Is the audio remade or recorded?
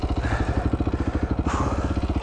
recorded